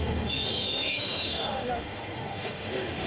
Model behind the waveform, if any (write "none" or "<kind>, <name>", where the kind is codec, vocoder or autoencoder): autoencoder, DAC-VAE